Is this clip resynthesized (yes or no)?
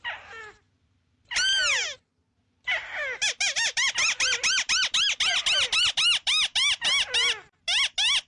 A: no